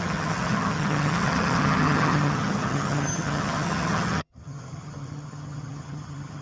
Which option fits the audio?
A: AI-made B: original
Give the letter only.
A